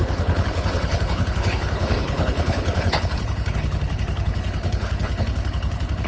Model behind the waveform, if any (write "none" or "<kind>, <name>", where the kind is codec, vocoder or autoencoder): codec, HILCodec